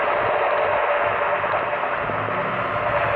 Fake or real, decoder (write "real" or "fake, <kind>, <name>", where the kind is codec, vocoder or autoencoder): real